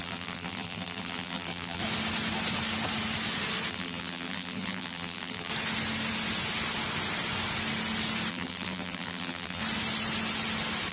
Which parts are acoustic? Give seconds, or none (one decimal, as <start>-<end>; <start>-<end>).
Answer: 1.8-3.7; 5.5-8.3; 9.6-10.9